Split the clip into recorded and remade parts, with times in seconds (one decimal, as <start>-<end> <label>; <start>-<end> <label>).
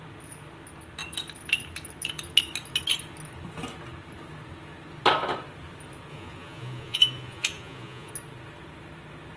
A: 0.0-6.1 recorded; 6.1-8.1 remade; 8.1-9.4 recorded